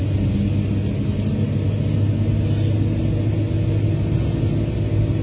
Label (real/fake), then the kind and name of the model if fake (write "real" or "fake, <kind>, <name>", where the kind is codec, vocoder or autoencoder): real